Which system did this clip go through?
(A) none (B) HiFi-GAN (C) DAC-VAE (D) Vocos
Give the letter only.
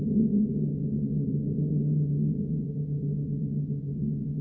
B